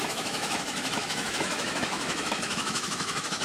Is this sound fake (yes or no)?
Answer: yes